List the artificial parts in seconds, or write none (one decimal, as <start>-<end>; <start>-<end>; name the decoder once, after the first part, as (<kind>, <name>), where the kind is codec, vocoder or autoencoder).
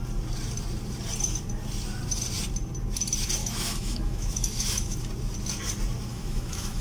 3.4-5.1 (autoencoder, DAC-VAE); 6.1-6.8